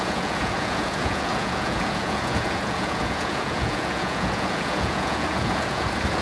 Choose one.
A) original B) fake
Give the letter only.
B